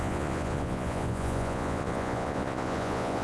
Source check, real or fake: fake